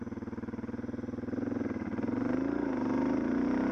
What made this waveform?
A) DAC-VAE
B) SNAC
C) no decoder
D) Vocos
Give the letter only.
C